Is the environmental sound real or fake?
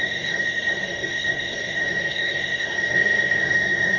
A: fake